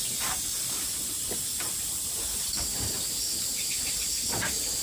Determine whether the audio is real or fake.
real